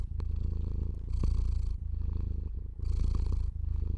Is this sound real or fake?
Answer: real